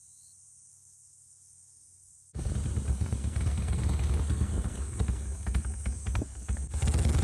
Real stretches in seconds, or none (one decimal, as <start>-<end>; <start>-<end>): 0.0-0.7; 2.5-2.9